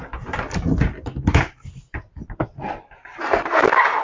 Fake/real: real